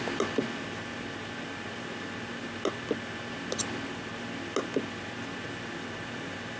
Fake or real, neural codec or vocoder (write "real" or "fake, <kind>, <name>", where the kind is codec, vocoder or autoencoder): real